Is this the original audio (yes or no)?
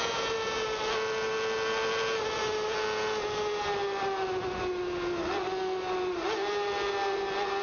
yes